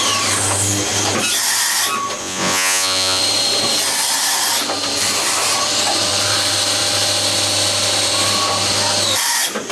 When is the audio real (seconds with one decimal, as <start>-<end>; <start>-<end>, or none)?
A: 0.0-2.2; 3.2-9.7